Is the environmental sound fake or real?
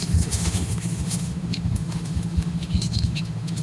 fake